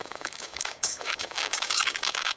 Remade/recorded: remade